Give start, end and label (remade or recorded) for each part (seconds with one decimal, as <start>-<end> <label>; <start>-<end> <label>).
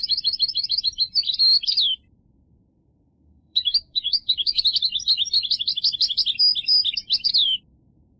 0.0-2.7 recorded; 2.7-4.6 remade; 4.6-8.2 recorded